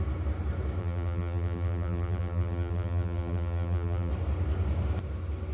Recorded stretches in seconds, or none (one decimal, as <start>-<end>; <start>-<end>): 0.0-0.8; 4.1-5.5